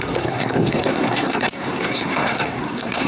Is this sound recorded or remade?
remade